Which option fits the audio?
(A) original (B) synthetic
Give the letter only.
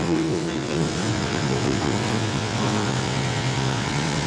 B